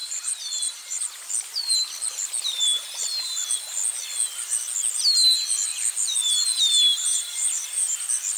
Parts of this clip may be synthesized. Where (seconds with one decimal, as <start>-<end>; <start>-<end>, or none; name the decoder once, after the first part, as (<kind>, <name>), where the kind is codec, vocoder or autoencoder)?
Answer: 0.0-1.3 (vocoder, BigVGAN v2); 7.0-8.0

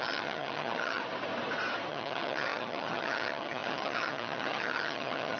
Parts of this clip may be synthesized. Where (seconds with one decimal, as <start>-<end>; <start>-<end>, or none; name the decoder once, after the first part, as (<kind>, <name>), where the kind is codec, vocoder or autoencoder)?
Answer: 0.0-1.0 (vocoder, HiFi-GAN); 1.9-5.4

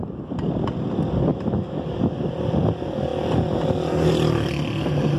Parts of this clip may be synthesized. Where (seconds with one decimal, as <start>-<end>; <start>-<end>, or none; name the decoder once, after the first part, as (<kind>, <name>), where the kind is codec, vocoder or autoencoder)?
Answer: 1.3-2.0 (autoencoder, DAC-VAE)

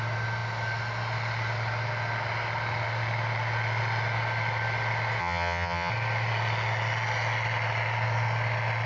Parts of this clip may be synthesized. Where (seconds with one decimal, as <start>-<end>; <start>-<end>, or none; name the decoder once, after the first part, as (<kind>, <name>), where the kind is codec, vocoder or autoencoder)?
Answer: 5.2-5.9 (vocoder, HiFi-GAN)

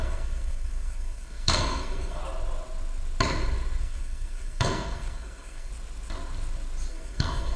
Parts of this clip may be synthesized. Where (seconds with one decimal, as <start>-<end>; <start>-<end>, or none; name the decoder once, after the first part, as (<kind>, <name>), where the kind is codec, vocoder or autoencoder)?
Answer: 0.0-2.2 (codec, SNAC); 3.8-5.7; 6.9-7.6

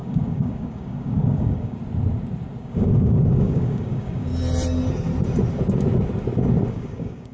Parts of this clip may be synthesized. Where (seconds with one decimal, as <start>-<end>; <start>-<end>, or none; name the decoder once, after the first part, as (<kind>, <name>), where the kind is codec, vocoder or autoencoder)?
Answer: 0.0-1.8 (codec, DAC); 2.6-4.3; 6.7-7.3